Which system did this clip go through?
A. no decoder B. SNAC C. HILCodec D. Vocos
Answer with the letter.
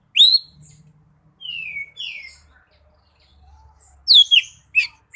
A